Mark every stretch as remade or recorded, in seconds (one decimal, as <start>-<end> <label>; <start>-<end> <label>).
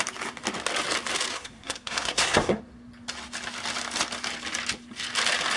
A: 0.0-1.3 recorded; 1.3-2.6 remade; 2.6-5.6 recorded